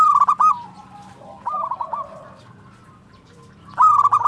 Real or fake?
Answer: real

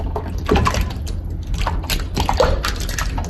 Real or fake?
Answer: real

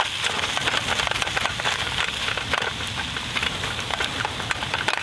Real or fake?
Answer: real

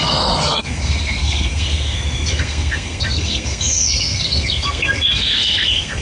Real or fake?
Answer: fake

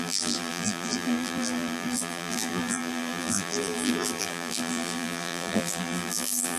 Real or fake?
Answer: fake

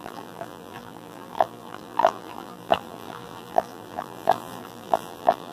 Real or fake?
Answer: fake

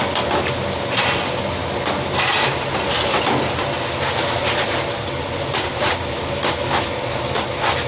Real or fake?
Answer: real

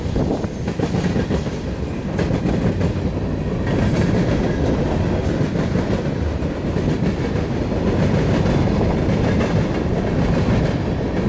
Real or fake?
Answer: real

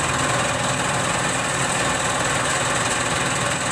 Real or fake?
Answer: real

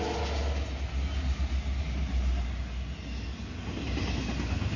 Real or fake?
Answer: real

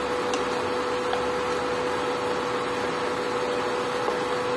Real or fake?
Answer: real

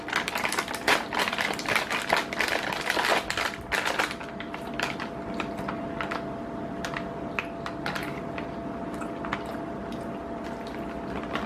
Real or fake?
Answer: real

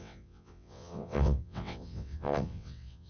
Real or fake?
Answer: fake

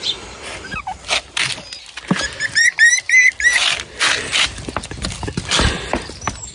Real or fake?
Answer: real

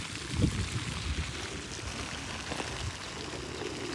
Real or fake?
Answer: real